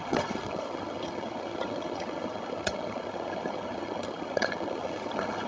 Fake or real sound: fake